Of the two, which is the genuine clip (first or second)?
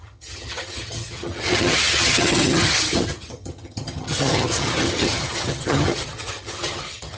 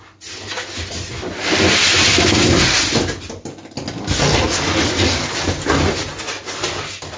second